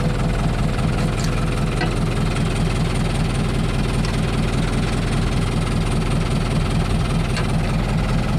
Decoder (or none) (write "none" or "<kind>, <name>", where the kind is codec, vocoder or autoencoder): none